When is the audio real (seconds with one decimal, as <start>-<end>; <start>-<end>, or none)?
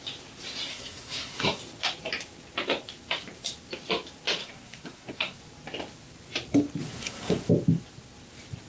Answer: 0.0-0.7; 1.6-4.4; 5.4-6.8; 7.5-8.7